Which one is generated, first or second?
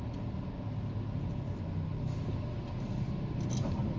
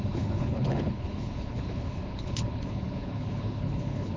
second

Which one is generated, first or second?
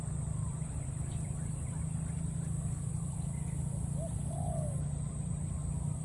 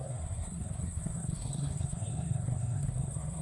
second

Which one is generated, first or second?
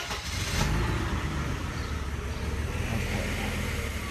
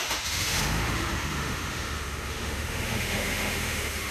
second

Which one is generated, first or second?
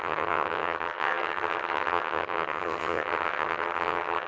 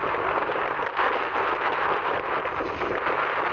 first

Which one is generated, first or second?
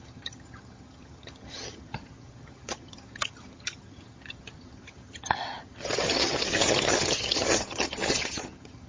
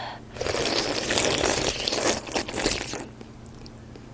first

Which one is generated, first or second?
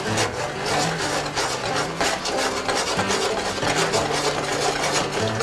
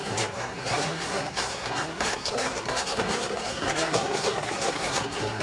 second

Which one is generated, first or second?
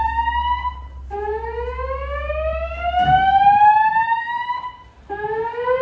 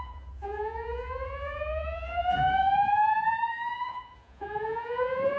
second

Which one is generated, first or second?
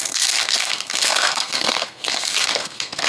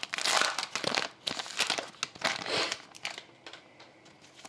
first